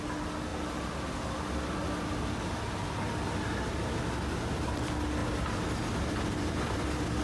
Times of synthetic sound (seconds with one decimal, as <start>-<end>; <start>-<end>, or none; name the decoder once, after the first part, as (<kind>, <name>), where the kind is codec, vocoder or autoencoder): none